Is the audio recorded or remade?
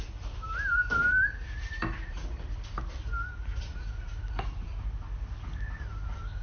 recorded